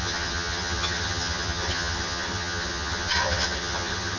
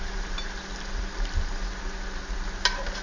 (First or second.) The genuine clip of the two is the second